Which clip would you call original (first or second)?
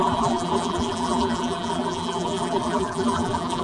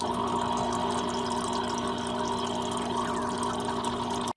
second